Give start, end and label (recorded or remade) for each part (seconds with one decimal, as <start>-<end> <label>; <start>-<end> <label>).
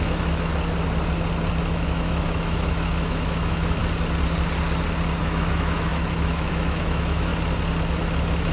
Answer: 0.0-0.5 remade; 0.5-1.6 recorded; 1.6-3.8 remade; 3.8-5.2 recorded; 5.2-7.3 remade; 7.3-8.5 recorded